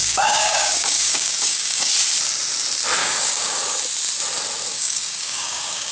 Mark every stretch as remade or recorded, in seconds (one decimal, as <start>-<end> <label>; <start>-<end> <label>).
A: 0.0-1.9 remade; 1.9-3.0 recorded; 3.0-3.6 remade; 3.6-4.7 recorded; 4.7-5.9 remade